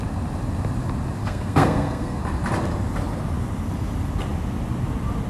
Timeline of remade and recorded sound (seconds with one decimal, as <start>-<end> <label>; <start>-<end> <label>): 0.0-1.2 recorded; 1.2-2.2 remade; 2.2-5.3 recorded